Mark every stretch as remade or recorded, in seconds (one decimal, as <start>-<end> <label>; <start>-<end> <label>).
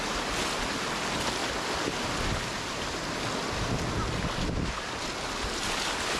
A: 0.0-6.2 recorded